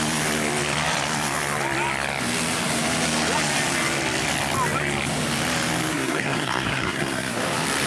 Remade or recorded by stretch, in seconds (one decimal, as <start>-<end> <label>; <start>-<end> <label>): 0.0-5.9 recorded; 5.9-7.4 remade; 7.4-7.9 recorded